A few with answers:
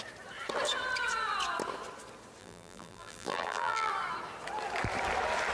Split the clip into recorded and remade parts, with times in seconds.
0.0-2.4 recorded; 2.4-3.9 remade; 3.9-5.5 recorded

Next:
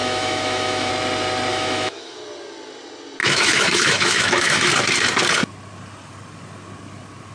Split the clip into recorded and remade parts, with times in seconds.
0.0-0.9 remade; 0.9-1.5 recorded; 1.5-2.2 remade; 2.2-3.2 recorded; 3.2-4.7 remade; 4.7-7.3 recorded

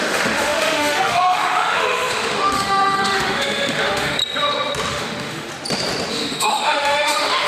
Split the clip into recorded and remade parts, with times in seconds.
0.0-4.2 remade; 4.2-4.9 recorded; 4.9-5.5 remade; 5.5-6.1 recorded; 6.1-7.5 remade